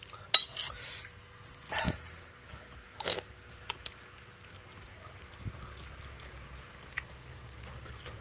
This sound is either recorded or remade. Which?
recorded